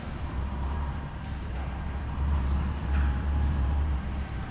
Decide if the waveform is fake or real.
fake